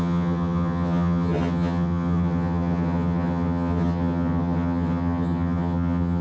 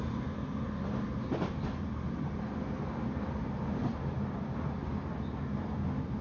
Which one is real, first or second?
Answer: second